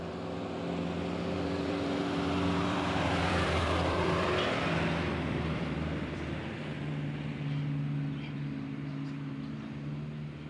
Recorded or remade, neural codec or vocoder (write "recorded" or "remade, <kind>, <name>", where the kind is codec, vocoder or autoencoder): remade, vocoder, BigVGAN v2